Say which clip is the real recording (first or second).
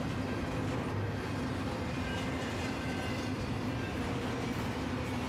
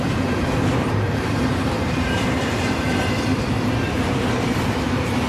first